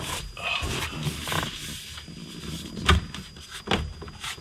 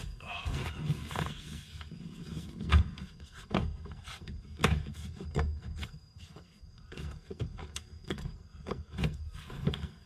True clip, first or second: first